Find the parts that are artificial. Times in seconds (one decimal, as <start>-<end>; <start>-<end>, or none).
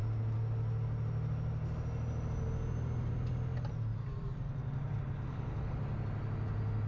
5.3-5.8